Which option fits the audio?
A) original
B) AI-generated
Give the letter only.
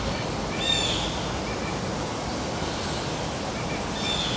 A